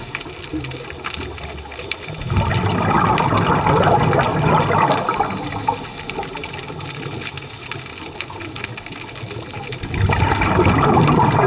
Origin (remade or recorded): recorded